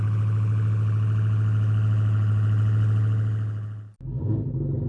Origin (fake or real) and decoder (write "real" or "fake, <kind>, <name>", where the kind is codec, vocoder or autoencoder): real